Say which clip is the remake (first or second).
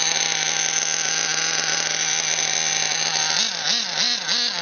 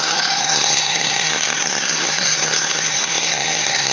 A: second